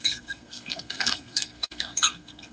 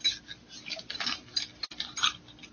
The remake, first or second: first